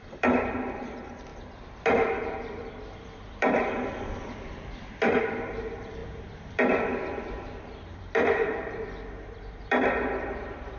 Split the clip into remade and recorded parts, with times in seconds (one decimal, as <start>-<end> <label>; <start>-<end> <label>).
0.0-10.8 remade